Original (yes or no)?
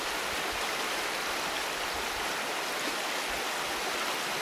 yes